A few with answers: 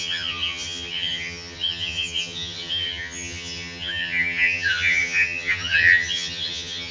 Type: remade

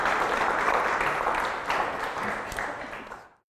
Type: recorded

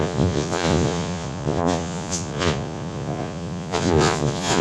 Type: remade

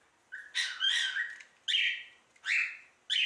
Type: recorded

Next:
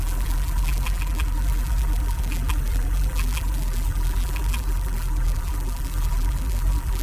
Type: remade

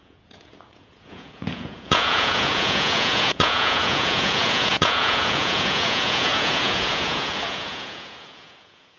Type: remade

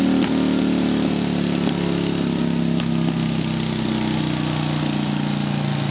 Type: recorded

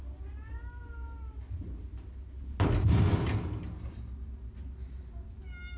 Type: recorded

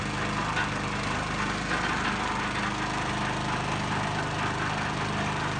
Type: recorded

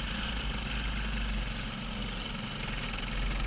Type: recorded